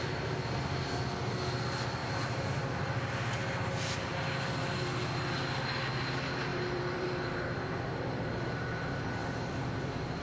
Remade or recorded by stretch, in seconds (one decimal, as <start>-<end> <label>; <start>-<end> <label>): 0.0-2.0 recorded; 2.0-3.1 remade; 3.1-6.5 recorded; 6.5-8.4 remade; 8.4-9.2 recorded; 9.2-9.7 remade; 9.7-10.2 recorded